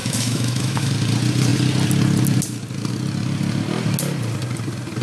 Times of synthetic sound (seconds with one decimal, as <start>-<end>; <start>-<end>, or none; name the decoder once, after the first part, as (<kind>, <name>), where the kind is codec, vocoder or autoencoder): 0.0-0.9 (autoencoder, DAC-VAE)